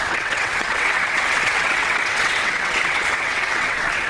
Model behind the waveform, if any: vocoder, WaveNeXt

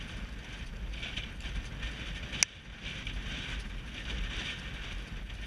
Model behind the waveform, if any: none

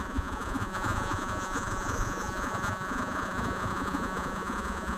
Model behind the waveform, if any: vocoder, Vocos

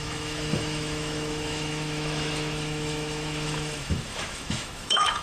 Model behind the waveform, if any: autoencoder, DAC-VAE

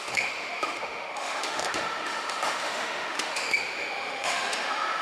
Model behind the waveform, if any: autoencoder, DAC-VAE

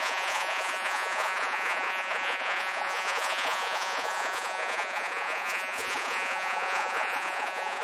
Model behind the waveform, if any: vocoder, Vocos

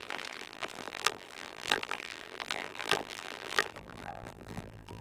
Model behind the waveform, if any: vocoder, BigVGAN v2